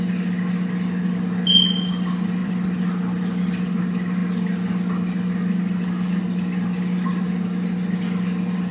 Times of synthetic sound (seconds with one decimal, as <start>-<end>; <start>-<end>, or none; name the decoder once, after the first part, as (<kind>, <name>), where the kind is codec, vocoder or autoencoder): 2.4-3.8 (vocoder, BigVGAN v2)